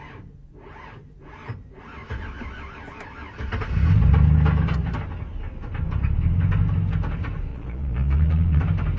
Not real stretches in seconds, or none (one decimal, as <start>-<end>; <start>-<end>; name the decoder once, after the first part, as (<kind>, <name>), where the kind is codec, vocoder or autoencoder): 7.5-8.6 (vocoder, Vocos)